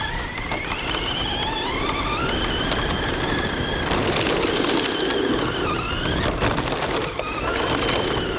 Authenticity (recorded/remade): recorded